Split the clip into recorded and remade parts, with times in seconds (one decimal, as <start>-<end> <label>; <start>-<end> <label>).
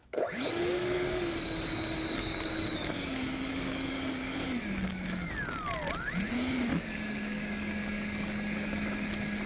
0.0-5.3 remade; 5.3-6.7 recorded; 6.7-8.9 remade; 8.9-9.5 recorded